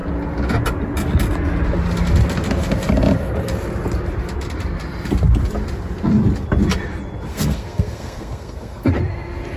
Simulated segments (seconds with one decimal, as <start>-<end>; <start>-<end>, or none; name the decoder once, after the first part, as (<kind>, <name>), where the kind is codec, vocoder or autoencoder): 7.3-8.9 (codec, SNAC)